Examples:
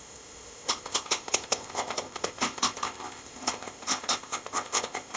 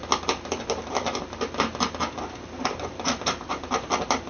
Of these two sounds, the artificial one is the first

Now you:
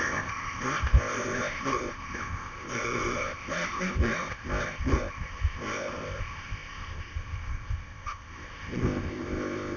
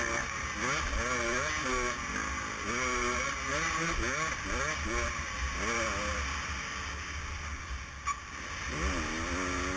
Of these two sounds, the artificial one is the first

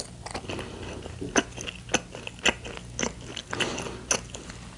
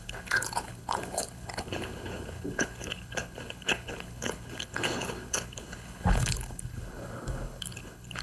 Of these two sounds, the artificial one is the second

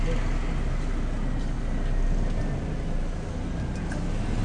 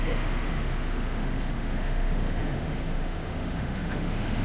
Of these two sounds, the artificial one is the second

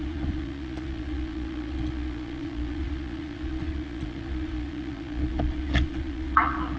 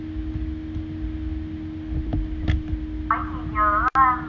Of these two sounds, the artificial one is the first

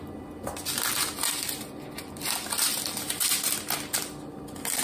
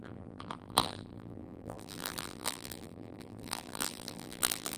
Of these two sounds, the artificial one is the second